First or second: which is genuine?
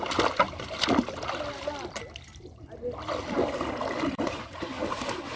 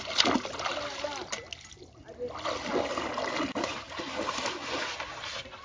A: second